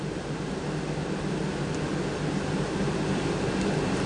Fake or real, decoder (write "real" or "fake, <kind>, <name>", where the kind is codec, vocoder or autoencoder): real